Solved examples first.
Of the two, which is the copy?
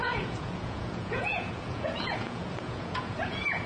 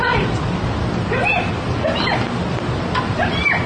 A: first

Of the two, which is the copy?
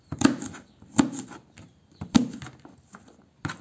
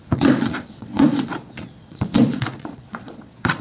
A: second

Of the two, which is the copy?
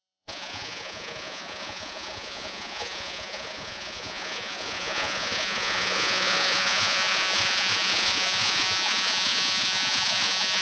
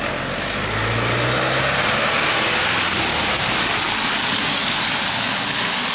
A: first